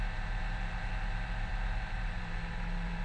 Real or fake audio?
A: fake